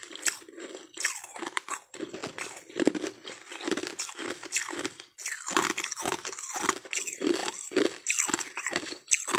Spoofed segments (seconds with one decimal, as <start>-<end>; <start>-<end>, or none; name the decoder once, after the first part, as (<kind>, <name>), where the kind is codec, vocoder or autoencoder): 2.2-4.3 (vocoder, BigVGAN v2)